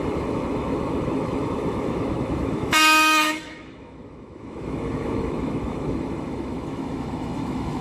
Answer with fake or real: fake